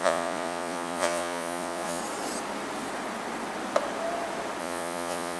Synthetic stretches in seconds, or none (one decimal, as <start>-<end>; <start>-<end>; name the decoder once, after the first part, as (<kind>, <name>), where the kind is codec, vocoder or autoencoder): 0.0-2.0 (vocoder, Vocos); 4.6-5.4